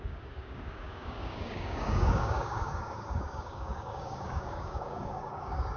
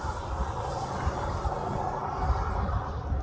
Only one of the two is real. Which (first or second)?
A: second